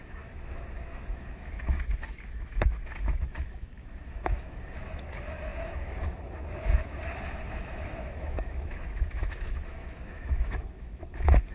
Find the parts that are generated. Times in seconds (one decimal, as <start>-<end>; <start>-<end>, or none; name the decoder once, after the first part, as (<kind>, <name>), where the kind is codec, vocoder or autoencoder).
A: 0.0-11.5 (autoencoder, DAC-VAE)